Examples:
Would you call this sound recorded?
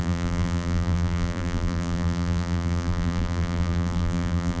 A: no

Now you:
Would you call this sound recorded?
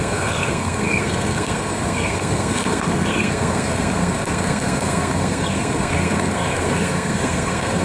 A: no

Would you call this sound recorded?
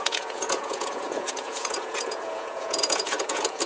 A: no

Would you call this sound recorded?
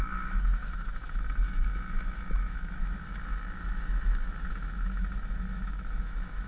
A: no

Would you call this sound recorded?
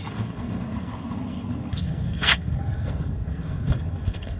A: no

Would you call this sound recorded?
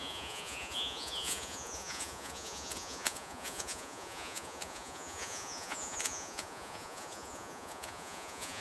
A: no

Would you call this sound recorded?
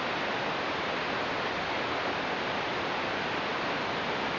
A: yes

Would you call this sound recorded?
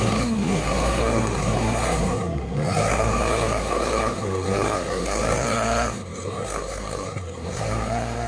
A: no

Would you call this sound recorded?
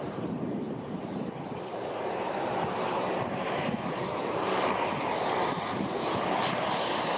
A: no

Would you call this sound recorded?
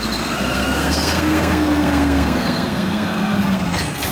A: no